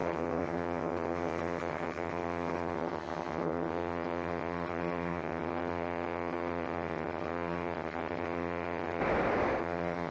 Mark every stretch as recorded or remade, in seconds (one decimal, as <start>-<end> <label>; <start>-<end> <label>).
0.0-9.0 remade; 9.0-9.6 recorded; 9.6-10.1 remade